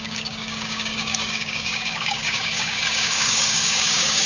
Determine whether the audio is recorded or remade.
remade